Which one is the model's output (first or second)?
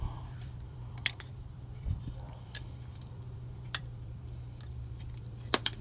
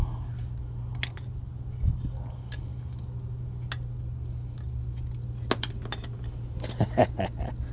first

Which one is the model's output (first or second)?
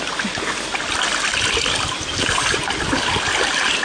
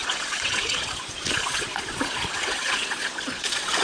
second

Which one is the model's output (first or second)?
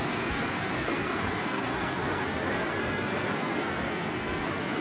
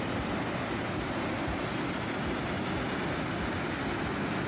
first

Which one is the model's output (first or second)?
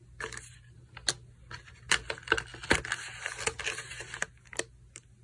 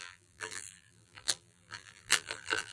second